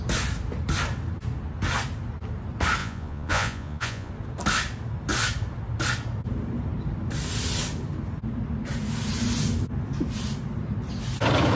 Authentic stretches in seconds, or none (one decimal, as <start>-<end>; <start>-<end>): 0.0-2.8; 4.1-11.6